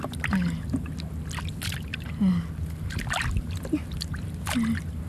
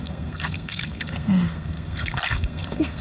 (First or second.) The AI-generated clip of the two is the second